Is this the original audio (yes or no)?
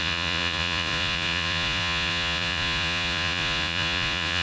no